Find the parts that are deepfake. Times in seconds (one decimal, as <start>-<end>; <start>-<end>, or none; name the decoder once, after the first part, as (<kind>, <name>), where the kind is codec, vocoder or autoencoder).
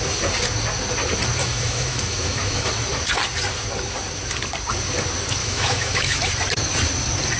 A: 1.4-2.7 (autoencoder, DAC-VAE); 5.4-6.3